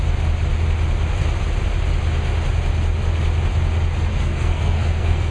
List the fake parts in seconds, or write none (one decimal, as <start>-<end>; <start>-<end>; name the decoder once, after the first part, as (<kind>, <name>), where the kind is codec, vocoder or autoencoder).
4.1-5.3 (codec, SNAC)